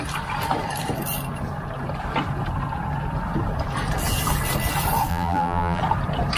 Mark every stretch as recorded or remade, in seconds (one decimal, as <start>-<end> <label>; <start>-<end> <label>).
0.0-5.1 recorded; 5.1-5.8 remade; 5.8-6.4 recorded